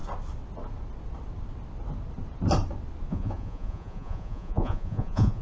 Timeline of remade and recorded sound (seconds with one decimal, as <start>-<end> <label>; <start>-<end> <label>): 0.0-3.1 recorded; 3.1-5.4 remade